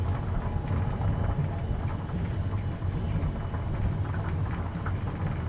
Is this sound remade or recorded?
recorded